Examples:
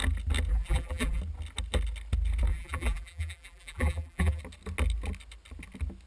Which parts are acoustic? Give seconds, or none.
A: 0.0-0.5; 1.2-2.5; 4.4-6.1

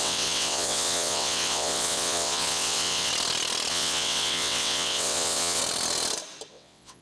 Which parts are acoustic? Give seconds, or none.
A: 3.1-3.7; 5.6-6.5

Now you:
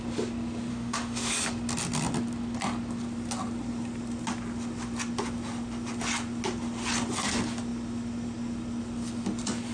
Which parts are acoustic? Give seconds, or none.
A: 0.0-0.7; 1.3-9.7

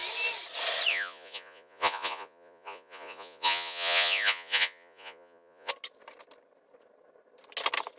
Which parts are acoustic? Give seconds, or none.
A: 0.0-0.9; 5.7-8.0

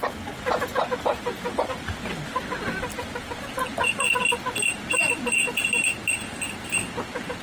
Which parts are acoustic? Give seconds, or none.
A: 0.0-1.1; 4.1-7.4

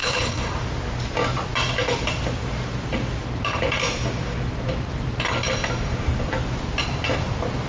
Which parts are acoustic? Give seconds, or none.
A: 0.5-7.7

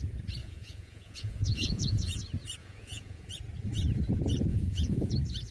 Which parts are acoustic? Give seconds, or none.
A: 0.0-0.4; 2.1-2.6; 3.3-4.5; 5.1-5.5

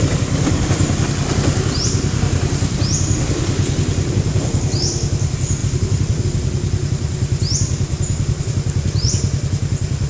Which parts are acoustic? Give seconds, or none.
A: 0.0-5.6; 6.2-10.1